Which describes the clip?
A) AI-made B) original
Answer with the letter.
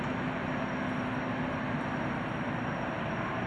B